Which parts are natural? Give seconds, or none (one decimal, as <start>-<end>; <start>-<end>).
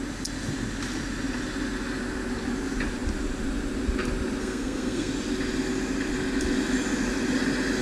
0.0-4.4; 5.1-7.8